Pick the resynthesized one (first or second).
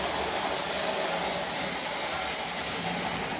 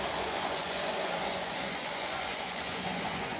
second